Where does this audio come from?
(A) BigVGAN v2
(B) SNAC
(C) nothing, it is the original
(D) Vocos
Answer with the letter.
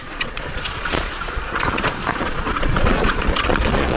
D